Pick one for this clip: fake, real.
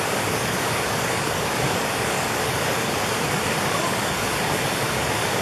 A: fake